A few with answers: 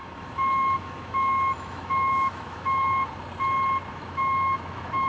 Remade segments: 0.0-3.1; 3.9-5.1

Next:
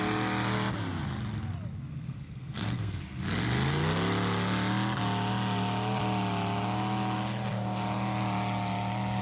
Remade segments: 1.9-3.0

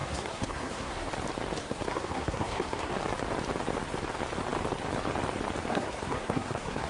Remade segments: 0.0-1.1; 1.6-2.9; 5.7-6.9

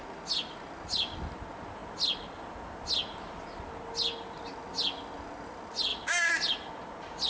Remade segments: none

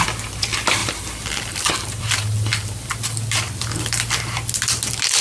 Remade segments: 0.8-2.1

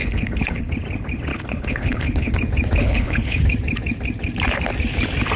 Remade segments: 0.0-0.7; 1.3-2.3; 2.8-3.4